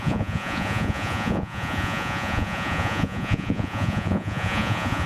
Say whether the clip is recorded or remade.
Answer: remade